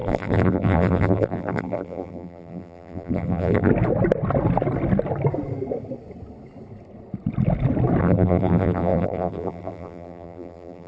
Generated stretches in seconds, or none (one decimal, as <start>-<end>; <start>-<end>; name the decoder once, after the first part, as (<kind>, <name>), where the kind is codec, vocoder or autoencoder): 0.0-3.7 (vocoder, BigVGAN v2); 8.0-10.9